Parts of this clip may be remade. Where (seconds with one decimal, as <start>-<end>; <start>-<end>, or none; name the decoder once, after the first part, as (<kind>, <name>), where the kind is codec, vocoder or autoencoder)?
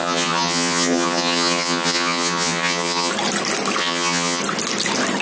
0.0-3.1 (vocoder, HiFi-GAN); 3.8-4.4